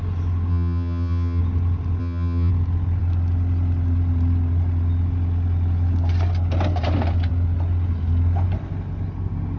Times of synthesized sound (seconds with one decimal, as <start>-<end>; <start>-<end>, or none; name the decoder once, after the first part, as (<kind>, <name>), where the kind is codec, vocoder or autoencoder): 0.5-1.4 (vocoder, HiFi-GAN); 2.0-2.5